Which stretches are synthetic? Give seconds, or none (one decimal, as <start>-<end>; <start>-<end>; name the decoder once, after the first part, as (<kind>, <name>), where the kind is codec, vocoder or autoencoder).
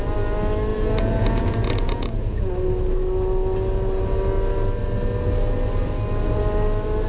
0.7-2.5 (vocoder, Vocos)